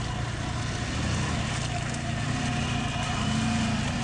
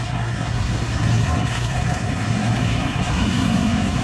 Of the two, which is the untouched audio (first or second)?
first